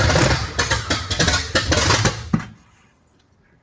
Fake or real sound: real